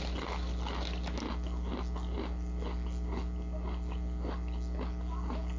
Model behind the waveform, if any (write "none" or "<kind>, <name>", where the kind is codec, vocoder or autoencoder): none